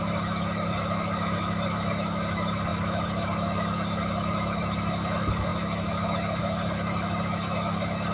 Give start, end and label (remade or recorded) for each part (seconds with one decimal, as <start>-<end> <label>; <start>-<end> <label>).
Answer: 0.0-8.1 remade